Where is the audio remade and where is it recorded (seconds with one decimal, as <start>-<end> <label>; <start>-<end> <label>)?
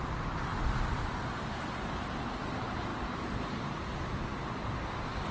0.0-0.5 remade; 0.5-2.1 recorded; 2.1-2.9 remade; 2.9-4.5 recorded; 4.5-5.3 remade